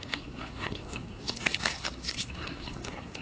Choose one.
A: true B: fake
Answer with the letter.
B